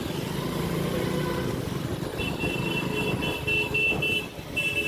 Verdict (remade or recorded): recorded